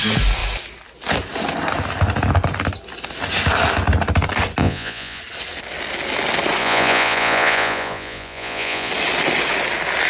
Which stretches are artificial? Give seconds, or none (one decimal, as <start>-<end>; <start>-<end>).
4.6-5.2; 6.6-8.9